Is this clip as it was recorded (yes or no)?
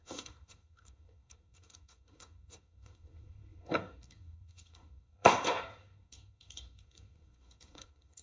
no